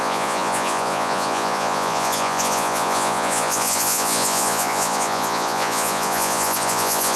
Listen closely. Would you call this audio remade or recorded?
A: remade